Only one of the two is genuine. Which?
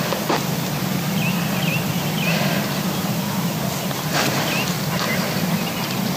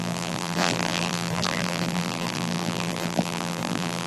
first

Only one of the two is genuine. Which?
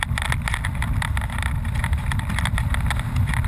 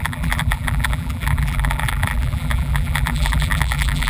first